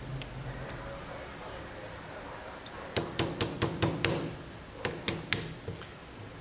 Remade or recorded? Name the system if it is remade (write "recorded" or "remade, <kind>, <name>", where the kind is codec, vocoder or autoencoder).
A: recorded